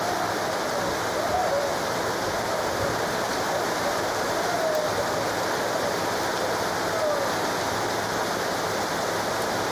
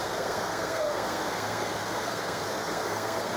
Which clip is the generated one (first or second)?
second